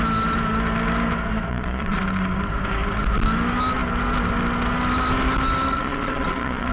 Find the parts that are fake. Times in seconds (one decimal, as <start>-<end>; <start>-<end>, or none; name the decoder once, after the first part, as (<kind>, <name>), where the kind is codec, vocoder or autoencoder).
1.5-2.0 (vocoder, Vocos); 5.7-6.7